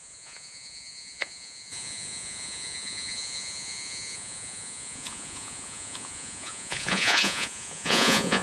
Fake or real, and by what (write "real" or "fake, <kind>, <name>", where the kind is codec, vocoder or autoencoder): fake, vocoder, Vocos